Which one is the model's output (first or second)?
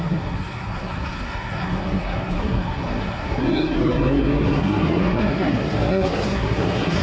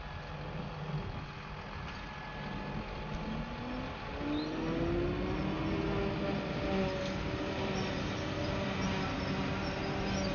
first